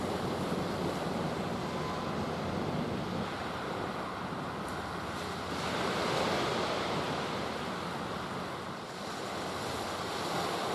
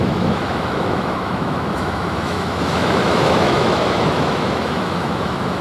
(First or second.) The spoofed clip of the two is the second